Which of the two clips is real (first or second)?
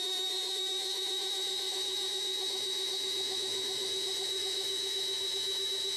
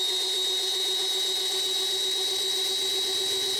second